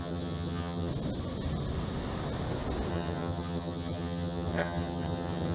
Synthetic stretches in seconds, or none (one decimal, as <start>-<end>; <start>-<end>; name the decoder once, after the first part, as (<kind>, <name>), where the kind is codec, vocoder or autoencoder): 0.0-0.9 (vocoder, HiFi-GAN); 2.9-5.5